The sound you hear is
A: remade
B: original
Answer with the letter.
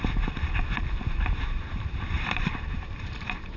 A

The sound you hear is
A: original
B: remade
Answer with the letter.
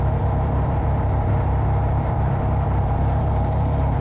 B